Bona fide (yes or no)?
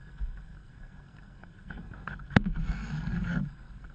no